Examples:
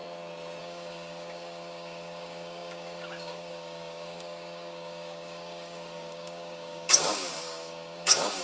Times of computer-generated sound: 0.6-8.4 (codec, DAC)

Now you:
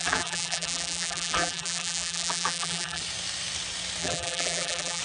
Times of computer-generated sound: 0.0-3.0 (vocoder, BigVGAN v2); 4.0-5.0

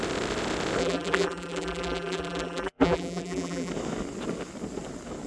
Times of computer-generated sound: 0.8-3.7 (vocoder, BigVGAN v2)

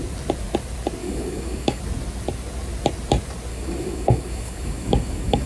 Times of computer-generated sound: 1.0-1.8 (codec, DAC); 3.5-5.5

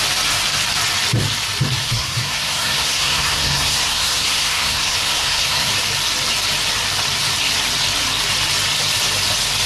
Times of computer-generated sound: 1.8-5.7 (codec, SNAC)

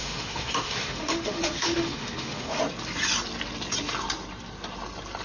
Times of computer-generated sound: 0.0-2.6 (autoencoder, DAC-VAE)

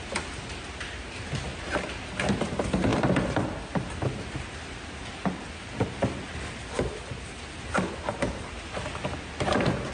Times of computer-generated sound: none